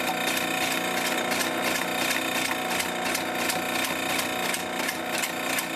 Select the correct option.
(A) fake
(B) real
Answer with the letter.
B